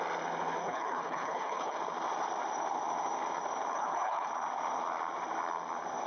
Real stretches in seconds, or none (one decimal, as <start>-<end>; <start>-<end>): 0.0-0.6; 1.8-3.7; 4.3-6.1